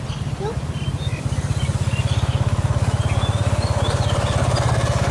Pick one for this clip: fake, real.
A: real